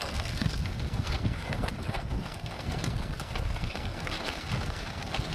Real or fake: fake